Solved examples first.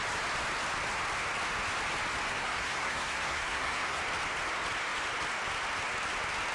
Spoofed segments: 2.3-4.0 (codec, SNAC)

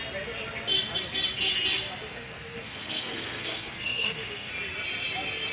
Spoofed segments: 2.1-4.5 (codec, SNAC)

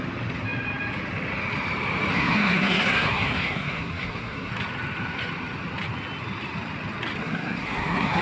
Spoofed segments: 2.1-4.5 (codec, SNAC); 7.2-8.2